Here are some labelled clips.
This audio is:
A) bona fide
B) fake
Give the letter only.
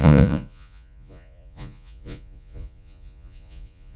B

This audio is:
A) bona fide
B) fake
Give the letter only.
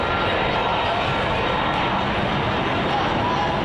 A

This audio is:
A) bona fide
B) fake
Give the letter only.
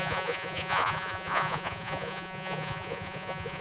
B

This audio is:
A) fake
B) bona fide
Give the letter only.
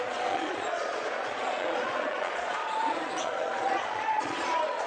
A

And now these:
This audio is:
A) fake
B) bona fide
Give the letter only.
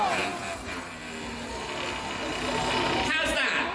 B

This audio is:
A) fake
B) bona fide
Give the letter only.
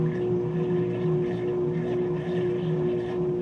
B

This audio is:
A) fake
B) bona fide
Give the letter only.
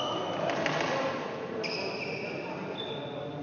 B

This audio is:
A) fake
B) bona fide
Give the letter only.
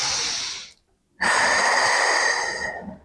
B